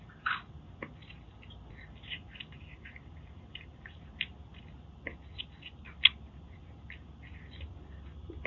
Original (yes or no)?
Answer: yes